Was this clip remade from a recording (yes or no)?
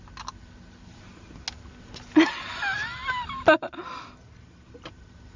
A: no